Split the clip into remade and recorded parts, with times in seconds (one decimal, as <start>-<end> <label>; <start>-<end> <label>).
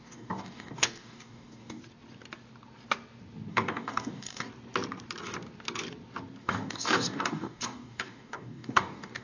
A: 0.0-1.8 remade; 1.8-3.5 recorded; 3.5-4.5 remade; 4.5-6.4 recorded; 6.4-9.2 remade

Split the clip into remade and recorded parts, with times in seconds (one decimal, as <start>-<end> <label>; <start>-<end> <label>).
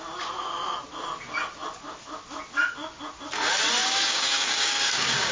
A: 0.0-3.8 recorded; 3.8-5.3 remade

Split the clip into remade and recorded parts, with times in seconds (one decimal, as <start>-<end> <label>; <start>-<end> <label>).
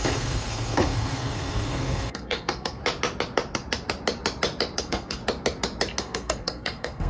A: 0.0-2.8 remade; 2.8-4.8 recorded; 4.8-5.2 remade; 5.2-6.0 recorded; 6.0-7.1 remade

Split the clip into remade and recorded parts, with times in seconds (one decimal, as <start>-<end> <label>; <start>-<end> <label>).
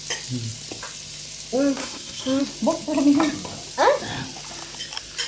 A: 0.0-1.8 recorded; 1.8-2.4 remade; 2.4-5.3 recorded